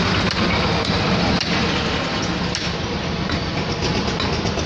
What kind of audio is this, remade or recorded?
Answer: recorded